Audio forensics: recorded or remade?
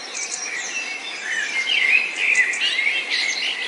recorded